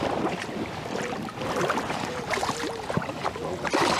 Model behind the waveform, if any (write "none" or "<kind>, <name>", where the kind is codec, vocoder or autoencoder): none